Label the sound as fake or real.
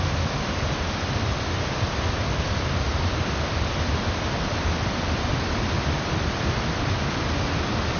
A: real